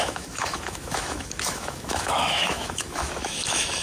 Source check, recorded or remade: remade